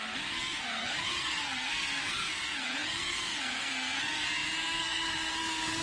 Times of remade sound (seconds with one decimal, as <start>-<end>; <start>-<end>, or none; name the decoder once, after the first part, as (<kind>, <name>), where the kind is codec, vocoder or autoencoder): 0.0-5.8 (codec, SNAC)